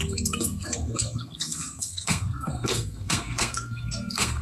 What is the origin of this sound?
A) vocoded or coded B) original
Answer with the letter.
A